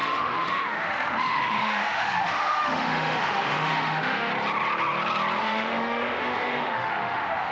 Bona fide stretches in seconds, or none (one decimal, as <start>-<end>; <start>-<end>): 4.3-5.4